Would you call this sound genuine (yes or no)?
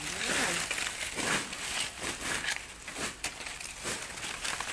yes